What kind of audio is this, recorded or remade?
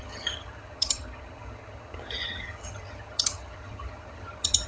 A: remade